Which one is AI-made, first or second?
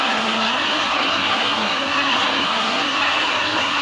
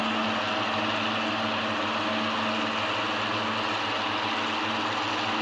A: first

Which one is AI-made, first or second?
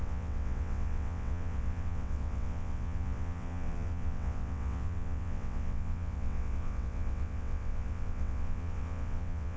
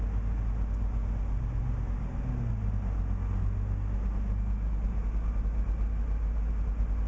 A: first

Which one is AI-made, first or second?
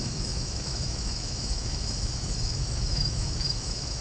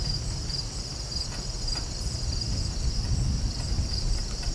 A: first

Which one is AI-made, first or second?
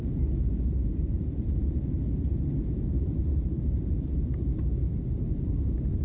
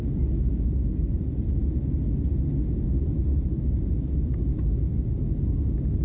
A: first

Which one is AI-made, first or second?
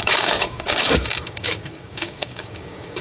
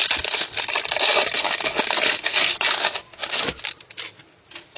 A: first